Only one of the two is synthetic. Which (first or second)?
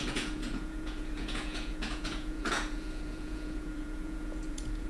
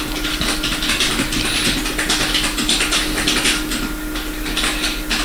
first